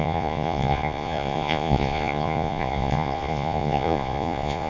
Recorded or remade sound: remade